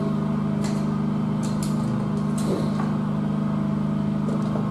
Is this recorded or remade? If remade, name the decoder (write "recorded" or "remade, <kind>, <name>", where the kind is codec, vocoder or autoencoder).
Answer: recorded